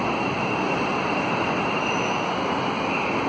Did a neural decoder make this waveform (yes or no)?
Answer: no